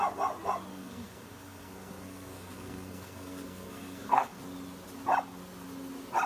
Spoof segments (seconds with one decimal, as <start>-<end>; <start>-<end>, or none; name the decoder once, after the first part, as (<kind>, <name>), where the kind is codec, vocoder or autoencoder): 0.7-4.4 (codec, SNAC)